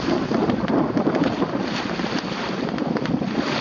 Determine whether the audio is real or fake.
real